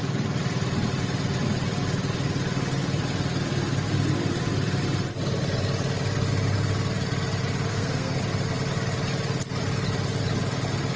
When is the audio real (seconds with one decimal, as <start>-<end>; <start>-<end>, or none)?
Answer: 0.0-7.7; 8.2-11.0